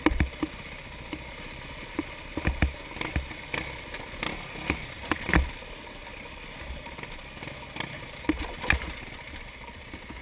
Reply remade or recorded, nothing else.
recorded